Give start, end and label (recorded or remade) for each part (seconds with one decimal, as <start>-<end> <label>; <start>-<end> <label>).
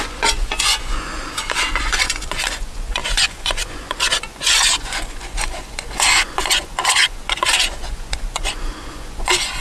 0.0-9.6 remade